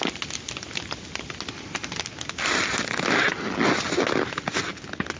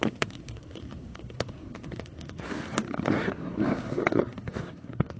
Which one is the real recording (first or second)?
first